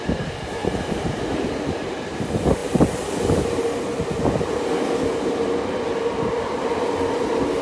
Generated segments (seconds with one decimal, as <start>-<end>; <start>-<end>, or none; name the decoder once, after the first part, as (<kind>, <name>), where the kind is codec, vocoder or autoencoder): 0.6-2.2 (vocoder, BigVGAN v2)